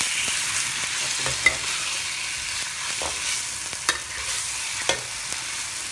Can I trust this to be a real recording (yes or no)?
yes